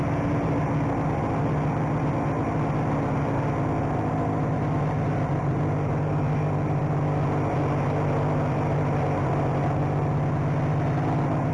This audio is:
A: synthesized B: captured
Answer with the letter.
B